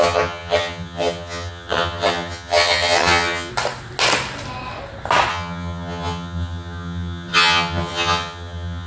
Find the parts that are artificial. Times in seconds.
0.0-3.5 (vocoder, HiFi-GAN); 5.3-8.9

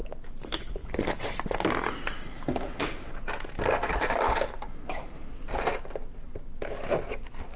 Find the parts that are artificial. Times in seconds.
none

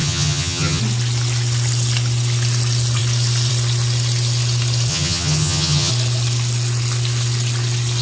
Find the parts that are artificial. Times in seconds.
0.0-0.8 (vocoder, HiFi-GAN); 4.9-5.9

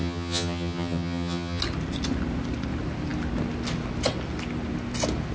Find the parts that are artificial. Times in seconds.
0.0-1.6 (vocoder, HiFi-GAN)

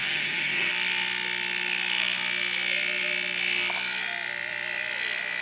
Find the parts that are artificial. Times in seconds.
0.0-0.7 (vocoder, HiFi-GAN)

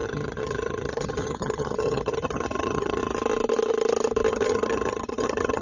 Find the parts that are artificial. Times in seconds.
0.0-3.0 (vocoder, HiFi-GAN); 4.3-5.6